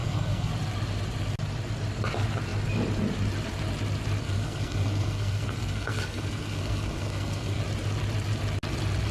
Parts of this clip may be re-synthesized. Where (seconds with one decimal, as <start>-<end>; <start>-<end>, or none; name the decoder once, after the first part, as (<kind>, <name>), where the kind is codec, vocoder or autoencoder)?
0.0-0.5 (codec, SNAC); 4.2-7.6